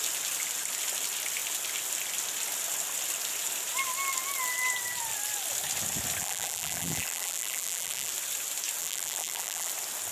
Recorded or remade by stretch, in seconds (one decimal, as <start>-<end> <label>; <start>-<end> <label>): 0.0-6.2 recorded; 6.2-8.1 remade; 8.1-8.8 recorded; 8.8-9.7 remade; 9.7-10.1 recorded